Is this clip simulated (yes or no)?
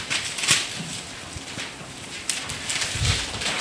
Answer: no